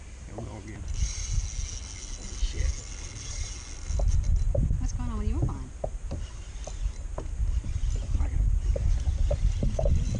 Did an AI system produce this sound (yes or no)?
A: no